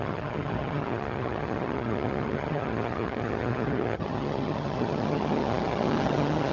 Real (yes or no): no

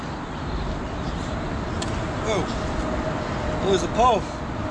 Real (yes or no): yes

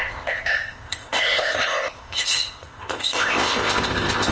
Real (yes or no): no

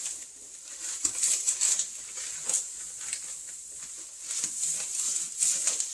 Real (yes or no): yes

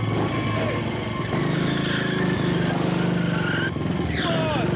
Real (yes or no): yes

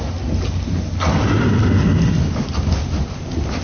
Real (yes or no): yes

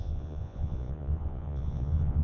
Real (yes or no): no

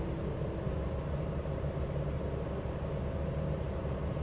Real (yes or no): yes